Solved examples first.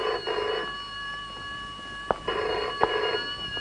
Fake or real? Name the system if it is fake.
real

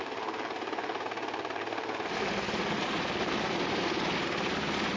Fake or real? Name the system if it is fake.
real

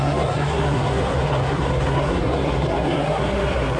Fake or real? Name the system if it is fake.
fake, codec, SNAC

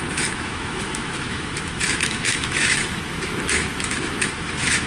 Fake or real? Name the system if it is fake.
fake, autoencoder, DAC-VAE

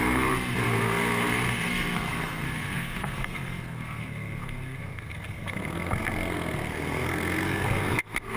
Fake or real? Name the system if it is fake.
fake, codec, SNAC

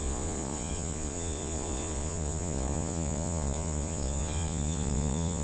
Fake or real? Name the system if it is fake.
fake, vocoder, Vocos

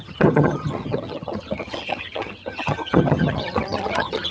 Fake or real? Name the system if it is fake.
fake, vocoder, HiFi-GAN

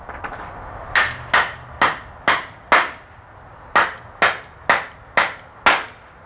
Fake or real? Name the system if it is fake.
real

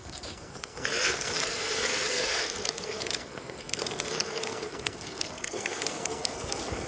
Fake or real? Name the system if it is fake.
fake, codec, SNAC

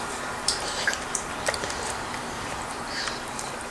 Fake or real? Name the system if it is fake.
fake, vocoder, BigVGAN v2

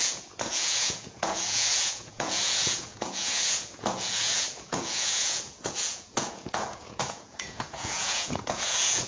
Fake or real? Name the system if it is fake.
fake, vocoder, Vocos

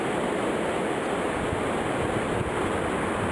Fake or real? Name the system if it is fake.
real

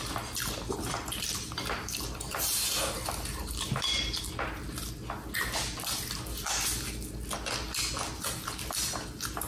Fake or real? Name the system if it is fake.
real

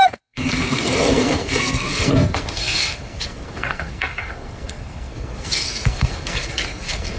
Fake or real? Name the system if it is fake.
fake, codec, SNAC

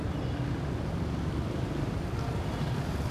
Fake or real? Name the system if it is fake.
real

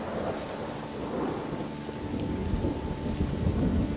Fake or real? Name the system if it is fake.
fake, vocoder, BigVGAN v2